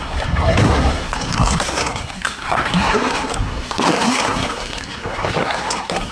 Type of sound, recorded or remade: remade